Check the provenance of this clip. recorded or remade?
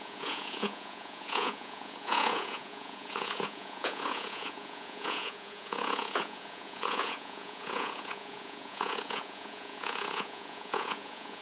remade